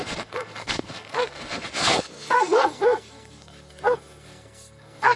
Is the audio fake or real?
fake